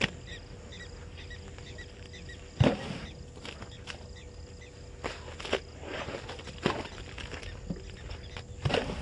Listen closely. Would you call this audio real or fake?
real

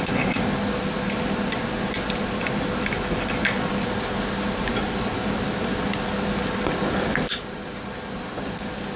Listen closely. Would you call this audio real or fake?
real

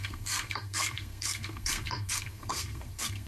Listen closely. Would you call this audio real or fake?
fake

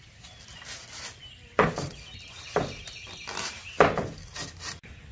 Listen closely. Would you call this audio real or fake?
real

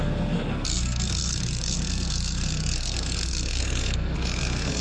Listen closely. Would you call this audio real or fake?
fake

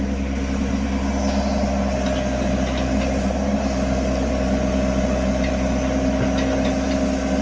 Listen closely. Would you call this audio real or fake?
real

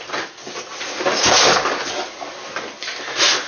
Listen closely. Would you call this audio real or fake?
real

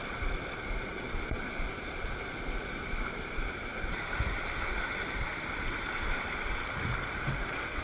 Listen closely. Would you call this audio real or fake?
real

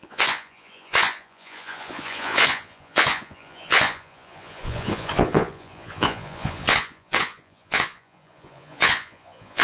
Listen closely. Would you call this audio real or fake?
fake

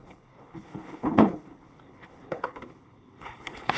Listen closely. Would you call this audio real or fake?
fake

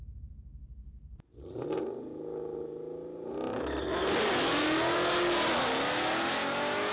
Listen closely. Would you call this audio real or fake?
real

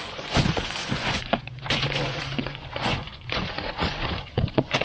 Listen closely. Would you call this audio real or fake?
fake